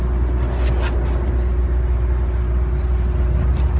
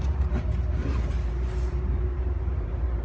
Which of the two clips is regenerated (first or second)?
second